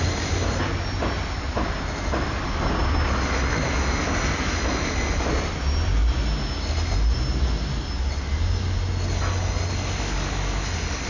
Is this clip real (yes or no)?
yes